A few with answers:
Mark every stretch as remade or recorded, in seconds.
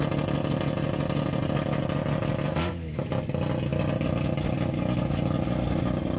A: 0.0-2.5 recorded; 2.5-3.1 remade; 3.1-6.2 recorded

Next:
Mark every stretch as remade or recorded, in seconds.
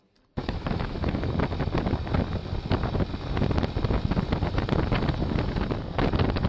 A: 0.0-0.4 recorded; 0.4-1.3 remade; 1.3-6.5 recorded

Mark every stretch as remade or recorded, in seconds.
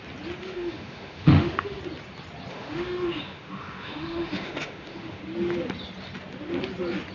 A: 0.0-0.4 recorded; 0.4-1.8 remade; 1.8-2.5 recorded; 2.5-5.2 remade; 5.2-7.1 recorded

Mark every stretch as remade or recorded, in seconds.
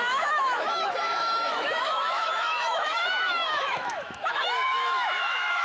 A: 0.0-5.6 remade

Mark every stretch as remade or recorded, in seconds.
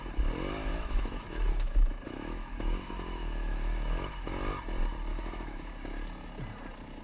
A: 0.0-0.7 recorded; 0.7-4.3 remade; 4.3-5.1 recorded; 5.1-5.7 remade; 5.7-7.0 recorded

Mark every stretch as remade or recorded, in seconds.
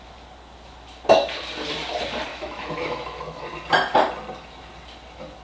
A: 0.0-2.3 recorded; 2.3-3.4 remade; 3.4-5.4 recorded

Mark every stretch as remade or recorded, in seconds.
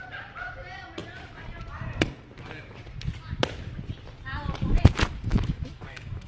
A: 0.0-5.3 recorded; 5.3-6.3 remade